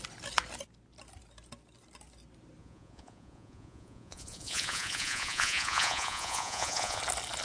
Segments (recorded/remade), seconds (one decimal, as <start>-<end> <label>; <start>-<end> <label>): 0.0-2.6 recorded; 2.6-7.0 remade; 7.0-7.4 recorded

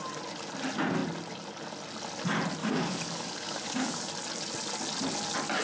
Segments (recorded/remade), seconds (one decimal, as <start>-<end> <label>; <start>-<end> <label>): 0.0-2.6 recorded; 2.6-4.1 remade; 4.1-5.6 recorded

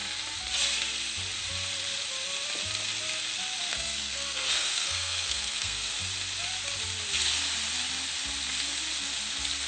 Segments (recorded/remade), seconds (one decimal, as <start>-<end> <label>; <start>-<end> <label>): 0.0-3.7 recorded; 3.7-5.9 remade; 5.9-9.7 recorded

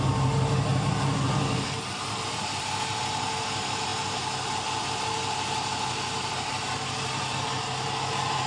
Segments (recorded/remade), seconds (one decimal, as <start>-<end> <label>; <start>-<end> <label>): 0.0-0.7 recorded; 0.7-2.6 remade; 2.6-8.5 recorded

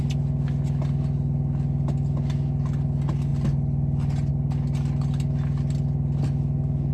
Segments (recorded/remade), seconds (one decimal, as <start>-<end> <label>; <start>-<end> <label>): 0.0-6.9 recorded